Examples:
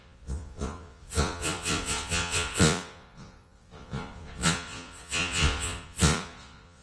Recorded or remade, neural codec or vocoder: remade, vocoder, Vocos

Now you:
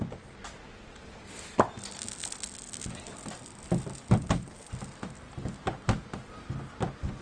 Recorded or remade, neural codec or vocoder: recorded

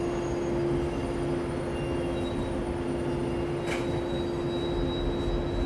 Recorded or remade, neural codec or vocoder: recorded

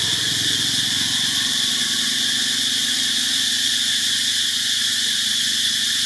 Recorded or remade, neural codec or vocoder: remade, vocoder, Vocos